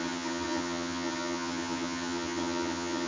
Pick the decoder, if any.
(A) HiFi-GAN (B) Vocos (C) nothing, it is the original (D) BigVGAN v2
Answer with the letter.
A